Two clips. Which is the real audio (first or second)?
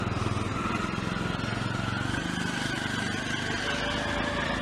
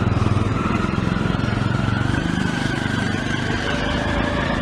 first